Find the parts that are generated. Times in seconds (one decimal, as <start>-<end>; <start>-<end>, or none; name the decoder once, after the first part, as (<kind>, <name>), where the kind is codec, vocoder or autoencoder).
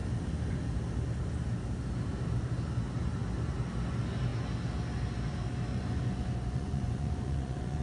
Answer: 5.7-7.8 (vocoder, Vocos)